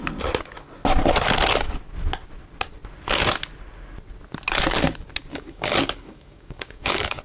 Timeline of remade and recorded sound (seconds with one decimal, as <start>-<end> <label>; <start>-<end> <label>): 0.0-5.3 recorded; 5.3-7.2 remade